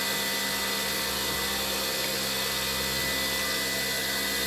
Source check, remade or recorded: recorded